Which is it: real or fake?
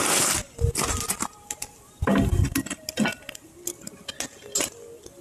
real